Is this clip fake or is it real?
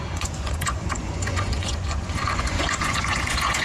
fake